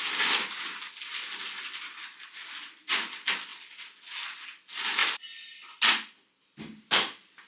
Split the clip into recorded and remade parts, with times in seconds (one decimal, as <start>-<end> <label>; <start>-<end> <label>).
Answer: 0.0-5.0 recorded; 5.0-5.8 remade; 5.8-7.5 recorded